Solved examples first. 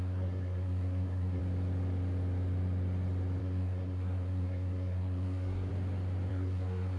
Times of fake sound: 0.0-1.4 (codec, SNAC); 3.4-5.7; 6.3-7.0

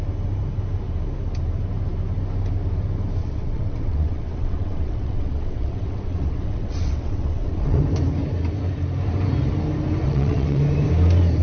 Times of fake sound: 3.2-7.8 (vocoder, WaveNeXt); 10.0-10.6

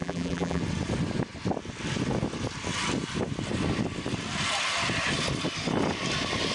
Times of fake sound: 0.0-0.6 (vocoder, BigVGAN v2)

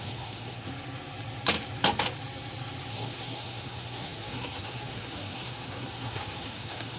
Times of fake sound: 0.0-0.7 (codec, SNAC); 2.9-7.0

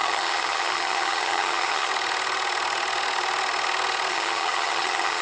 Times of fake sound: 0.0-1.9 (vocoder, HiFi-GAN); 4.1-5.2

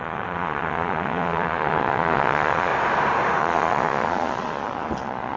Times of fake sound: 0.0-2.7 (vocoder, Vocos); 3.4-5.4